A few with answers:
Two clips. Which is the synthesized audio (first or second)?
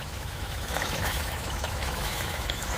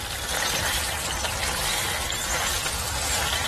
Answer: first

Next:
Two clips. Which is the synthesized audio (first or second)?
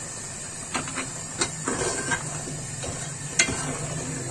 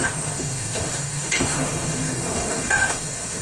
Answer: second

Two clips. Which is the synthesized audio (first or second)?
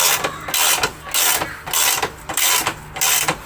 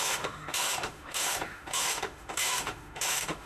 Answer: second